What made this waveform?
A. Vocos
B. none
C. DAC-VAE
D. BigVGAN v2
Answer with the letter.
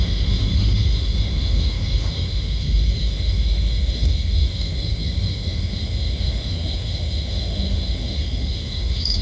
C